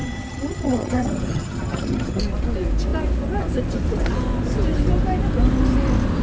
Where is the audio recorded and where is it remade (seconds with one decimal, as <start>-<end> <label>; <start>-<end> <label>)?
0.0-2.2 remade; 2.2-6.2 recorded